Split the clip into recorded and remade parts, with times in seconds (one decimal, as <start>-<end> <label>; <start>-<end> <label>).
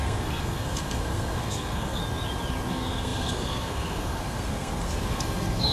0.0-2.0 remade; 2.0-2.7 recorded; 2.7-5.7 remade